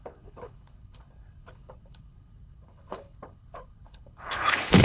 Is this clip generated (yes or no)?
yes